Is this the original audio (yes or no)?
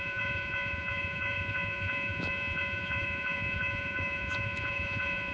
no